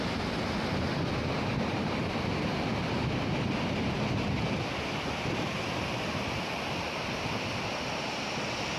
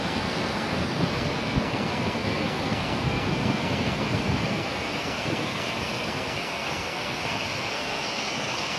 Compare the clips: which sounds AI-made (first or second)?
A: second